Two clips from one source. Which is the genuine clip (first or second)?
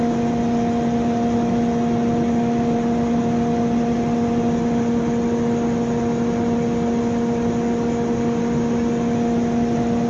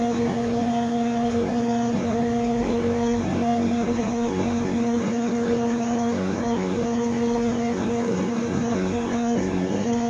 first